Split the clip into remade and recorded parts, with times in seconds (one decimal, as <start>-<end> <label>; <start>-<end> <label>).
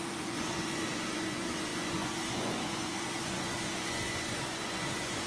0.0-5.3 remade